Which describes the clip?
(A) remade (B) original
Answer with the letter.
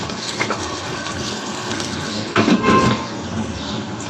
A